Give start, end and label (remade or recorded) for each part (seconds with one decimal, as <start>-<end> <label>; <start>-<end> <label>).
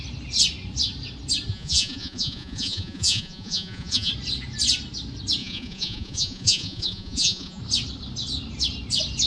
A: 0.0-1.5 recorded; 1.5-4.1 remade; 4.1-5.4 recorded; 5.4-7.6 remade; 7.6-9.3 recorded